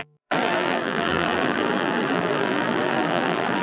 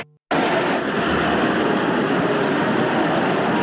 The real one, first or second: second